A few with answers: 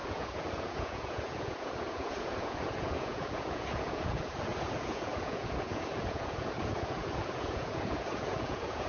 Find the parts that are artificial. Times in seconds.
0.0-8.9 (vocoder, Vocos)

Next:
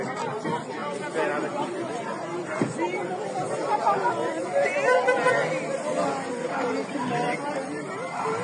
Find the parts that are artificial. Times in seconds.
none

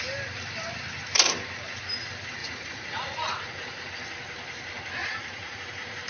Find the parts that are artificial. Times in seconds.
2.4-3.9 (vocoder, Vocos); 5.0-5.6

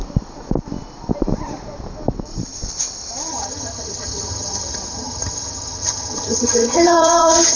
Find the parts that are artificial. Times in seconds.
3.3-7.6 (vocoder, HiFi-GAN)

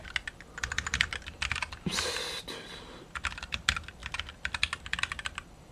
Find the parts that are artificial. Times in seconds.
none

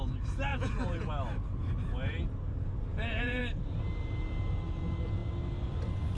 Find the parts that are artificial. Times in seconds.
0.5-1.1 (vocoder, Vocos); 2.9-3.4